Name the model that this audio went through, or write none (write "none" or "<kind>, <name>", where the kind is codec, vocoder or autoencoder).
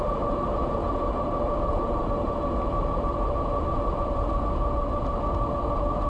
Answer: none